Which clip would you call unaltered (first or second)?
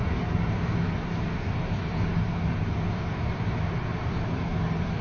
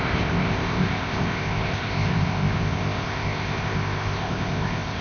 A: first